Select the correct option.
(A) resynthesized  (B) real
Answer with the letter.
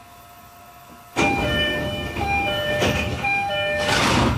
A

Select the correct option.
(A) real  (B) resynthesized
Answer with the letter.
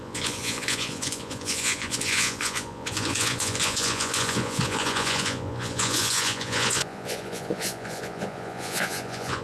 B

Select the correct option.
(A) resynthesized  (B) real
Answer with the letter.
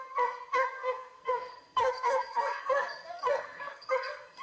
A